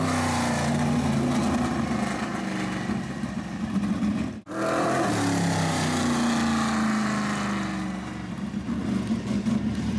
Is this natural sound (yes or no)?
yes